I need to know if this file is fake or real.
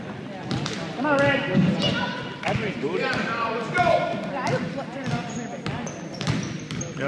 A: real